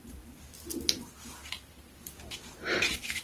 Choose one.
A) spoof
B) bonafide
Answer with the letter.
B